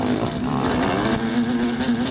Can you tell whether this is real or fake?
real